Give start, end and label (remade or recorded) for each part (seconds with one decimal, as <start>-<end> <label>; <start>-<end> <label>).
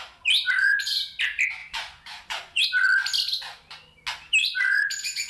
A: 0.0-0.6 recorded; 0.6-1.1 remade; 1.1-1.6 recorded; 1.6-2.6 remade; 2.6-4.4 recorded; 4.4-5.3 remade